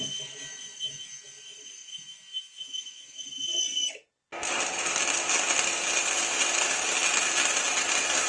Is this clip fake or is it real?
real